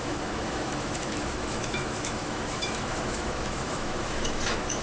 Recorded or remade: remade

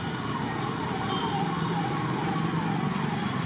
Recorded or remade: recorded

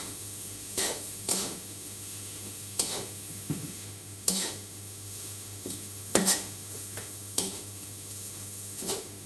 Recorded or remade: remade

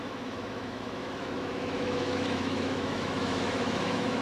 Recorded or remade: remade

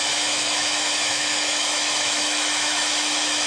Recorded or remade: remade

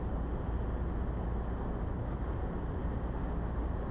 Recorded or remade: recorded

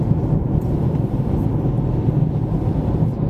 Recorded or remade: recorded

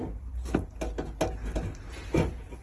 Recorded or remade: recorded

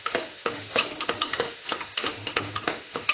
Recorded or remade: remade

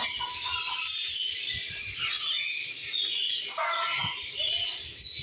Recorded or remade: recorded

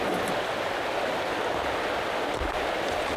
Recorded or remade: recorded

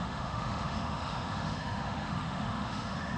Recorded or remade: remade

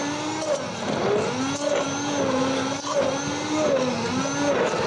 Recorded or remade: recorded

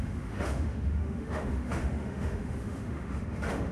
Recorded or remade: remade